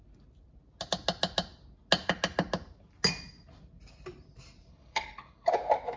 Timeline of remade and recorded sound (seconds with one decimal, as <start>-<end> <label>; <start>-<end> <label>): 0.0-4.7 recorded; 4.7-5.5 remade; 5.5-6.0 recorded